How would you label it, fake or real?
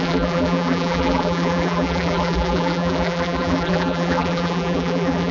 fake